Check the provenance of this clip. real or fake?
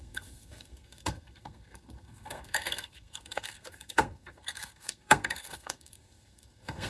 fake